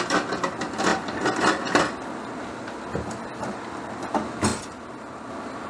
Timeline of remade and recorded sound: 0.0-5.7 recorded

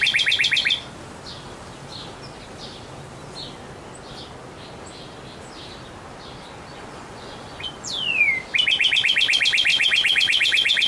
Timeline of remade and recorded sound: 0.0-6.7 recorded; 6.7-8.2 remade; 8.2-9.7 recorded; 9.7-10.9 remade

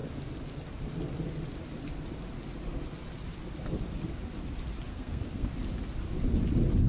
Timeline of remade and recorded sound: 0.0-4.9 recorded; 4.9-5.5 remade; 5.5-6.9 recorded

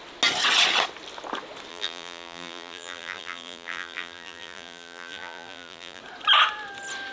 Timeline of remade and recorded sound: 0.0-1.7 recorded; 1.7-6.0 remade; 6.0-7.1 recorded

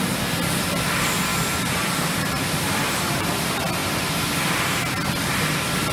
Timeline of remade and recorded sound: 0.0-1.3 recorded; 1.3-3.3 remade; 3.3-3.8 recorded; 3.8-4.3 remade; 4.3-5.9 recorded